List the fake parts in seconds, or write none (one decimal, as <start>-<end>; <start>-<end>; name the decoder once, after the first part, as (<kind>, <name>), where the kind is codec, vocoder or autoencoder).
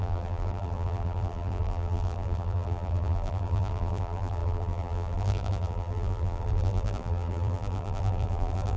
0.0-8.8 (vocoder, BigVGAN v2)